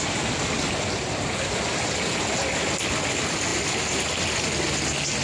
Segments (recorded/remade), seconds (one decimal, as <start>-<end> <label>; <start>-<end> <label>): 0.0-5.2 recorded